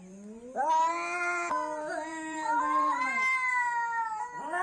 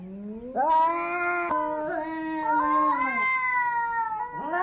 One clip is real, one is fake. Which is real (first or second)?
second